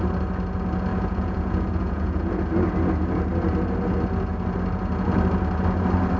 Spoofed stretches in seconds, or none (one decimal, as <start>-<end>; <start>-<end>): 0.9-2.5